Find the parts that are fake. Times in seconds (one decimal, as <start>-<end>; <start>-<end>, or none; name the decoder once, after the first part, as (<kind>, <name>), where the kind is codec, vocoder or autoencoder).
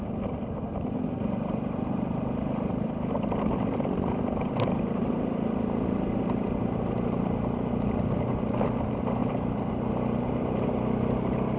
none